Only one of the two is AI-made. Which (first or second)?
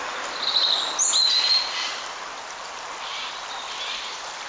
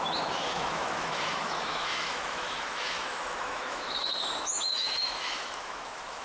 second